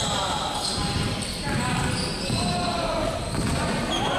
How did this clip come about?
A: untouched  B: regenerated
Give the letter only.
A